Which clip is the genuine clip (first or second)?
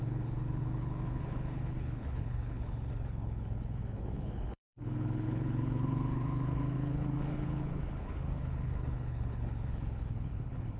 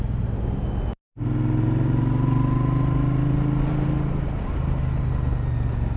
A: second